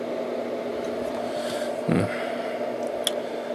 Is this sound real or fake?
real